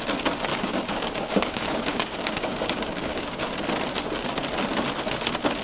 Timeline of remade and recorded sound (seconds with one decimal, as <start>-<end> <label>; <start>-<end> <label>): 0.0-0.5 recorded; 0.5-3.4 remade; 3.4-5.6 recorded